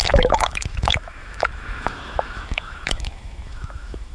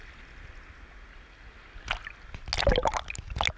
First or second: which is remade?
first